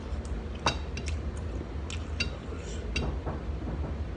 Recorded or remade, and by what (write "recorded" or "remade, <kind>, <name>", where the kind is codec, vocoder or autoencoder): recorded